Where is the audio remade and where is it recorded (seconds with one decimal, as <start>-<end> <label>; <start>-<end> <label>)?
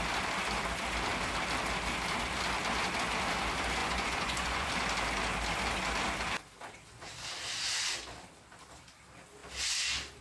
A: 0.0-3.8 recorded; 3.8-4.7 remade; 4.7-10.2 recorded